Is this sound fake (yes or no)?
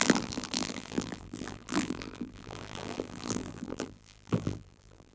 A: yes